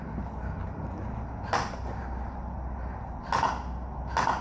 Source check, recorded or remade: recorded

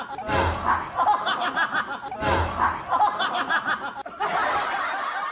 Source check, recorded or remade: recorded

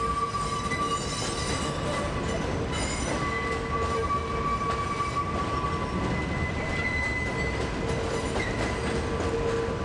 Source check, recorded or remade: recorded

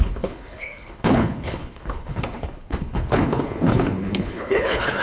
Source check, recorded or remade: remade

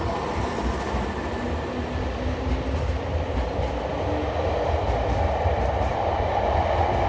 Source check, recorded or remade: recorded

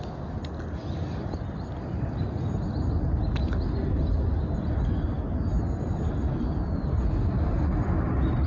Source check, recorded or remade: recorded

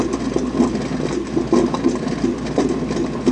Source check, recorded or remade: recorded